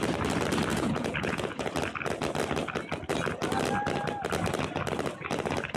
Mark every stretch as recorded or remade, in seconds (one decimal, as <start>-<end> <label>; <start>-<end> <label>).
0.0-0.7 recorded; 0.7-1.7 remade; 1.7-5.8 recorded